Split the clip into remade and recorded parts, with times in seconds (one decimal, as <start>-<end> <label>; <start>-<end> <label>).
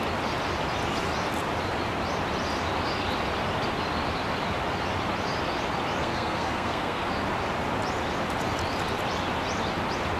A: 0.0-6.0 recorded; 6.0-7.1 remade; 7.1-10.2 recorded